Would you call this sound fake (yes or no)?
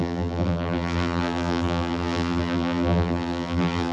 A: yes